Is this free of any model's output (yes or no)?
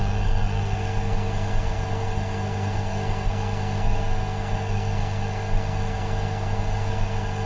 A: no